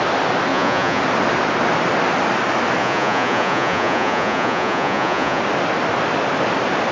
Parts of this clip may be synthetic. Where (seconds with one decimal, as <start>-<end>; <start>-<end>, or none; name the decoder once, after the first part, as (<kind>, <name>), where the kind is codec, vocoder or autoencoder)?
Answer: 0.5-1.0 (vocoder, Vocos); 2.8-5.4